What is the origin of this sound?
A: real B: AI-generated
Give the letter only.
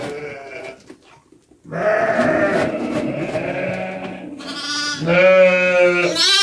A